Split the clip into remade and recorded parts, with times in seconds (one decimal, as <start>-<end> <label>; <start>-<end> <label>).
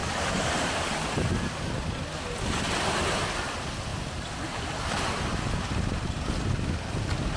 0.0-3.9 recorded; 3.9-4.7 remade; 4.7-7.4 recorded